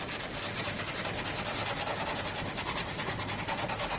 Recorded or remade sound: recorded